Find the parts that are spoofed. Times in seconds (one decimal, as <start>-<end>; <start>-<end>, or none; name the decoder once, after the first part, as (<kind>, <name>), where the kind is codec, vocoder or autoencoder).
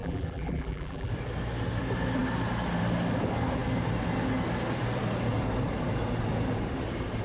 0.0-1.1 (vocoder, BigVGAN v2)